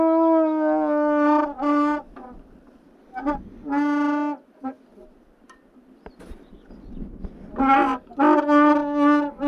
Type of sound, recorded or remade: recorded